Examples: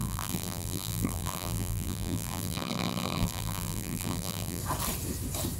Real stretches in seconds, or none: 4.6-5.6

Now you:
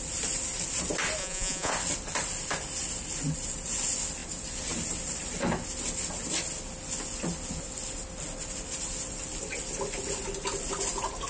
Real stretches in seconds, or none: 0.0-1.2; 1.7-11.3

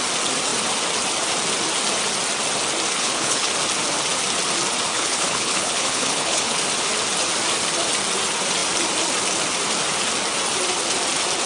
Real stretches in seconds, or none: 0.0-2.9; 3.5-4.9; 6.6-11.5

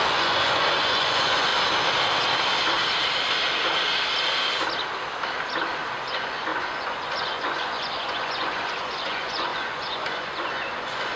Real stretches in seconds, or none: 1.5-6.1

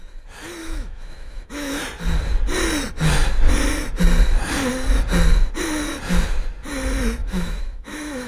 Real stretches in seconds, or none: 0.0-0.6; 1.8-7.2

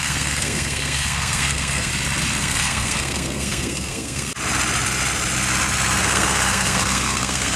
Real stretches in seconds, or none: 1.9-2.4; 4.3-6.0

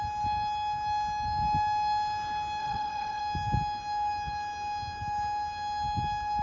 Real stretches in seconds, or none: 0.0-2.6; 3.2-6.4